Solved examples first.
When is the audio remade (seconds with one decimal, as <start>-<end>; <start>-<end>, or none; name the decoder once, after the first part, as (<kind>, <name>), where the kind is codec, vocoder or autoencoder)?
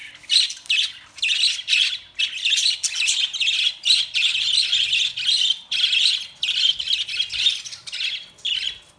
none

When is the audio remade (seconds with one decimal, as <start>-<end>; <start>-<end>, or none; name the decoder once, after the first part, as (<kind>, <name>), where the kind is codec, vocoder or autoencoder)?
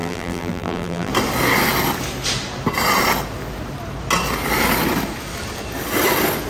0.0-1.1 (vocoder, BigVGAN v2)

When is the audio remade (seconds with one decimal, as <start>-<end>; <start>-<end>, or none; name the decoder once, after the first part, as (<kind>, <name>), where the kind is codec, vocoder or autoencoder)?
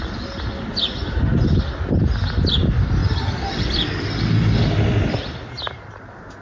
none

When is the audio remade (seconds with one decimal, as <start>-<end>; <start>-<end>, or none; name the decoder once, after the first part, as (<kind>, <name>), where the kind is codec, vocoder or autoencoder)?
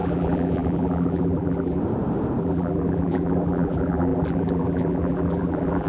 0.0-1.8 (vocoder, BigVGAN v2); 2.4-5.9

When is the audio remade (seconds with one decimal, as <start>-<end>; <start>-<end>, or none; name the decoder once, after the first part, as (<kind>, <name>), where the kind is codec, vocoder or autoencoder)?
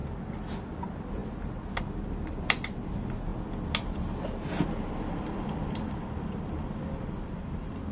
0.7-1.2 (vocoder, BigVGAN v2); 1.8-3.3; 5.2-7.9